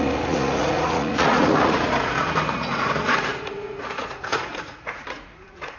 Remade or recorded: remade